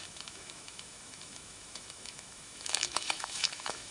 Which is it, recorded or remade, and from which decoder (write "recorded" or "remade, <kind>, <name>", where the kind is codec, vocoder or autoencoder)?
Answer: remade, autoencoder, DAC-VAE